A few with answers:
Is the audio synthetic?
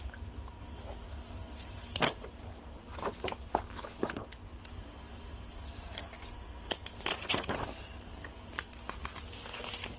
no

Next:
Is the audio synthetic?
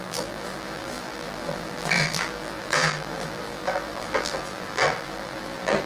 yes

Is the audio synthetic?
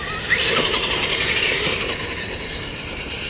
yes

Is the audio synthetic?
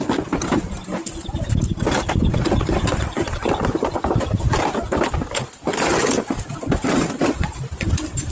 no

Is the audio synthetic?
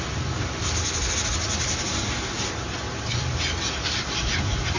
no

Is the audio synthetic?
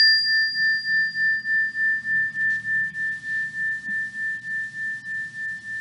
no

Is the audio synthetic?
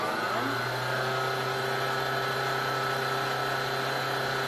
no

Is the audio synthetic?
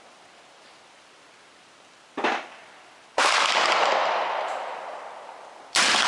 yes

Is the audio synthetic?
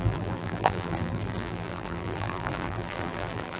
yes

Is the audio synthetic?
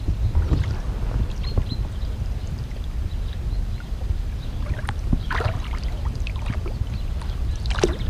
yes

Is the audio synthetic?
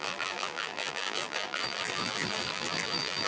yes